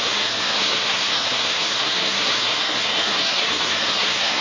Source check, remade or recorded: remade